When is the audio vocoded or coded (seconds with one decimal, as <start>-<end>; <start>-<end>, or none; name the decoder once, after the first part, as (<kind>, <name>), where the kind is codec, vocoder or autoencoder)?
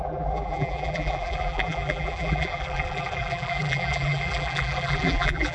0.0-5.5 (vocoder, BigVGAN v2)